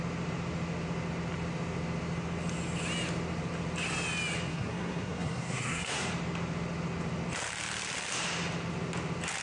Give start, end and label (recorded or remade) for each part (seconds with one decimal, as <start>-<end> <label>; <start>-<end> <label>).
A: 0.0-4.5 recorded; 4.5-6.1 remade; 6.1-9.4 recorded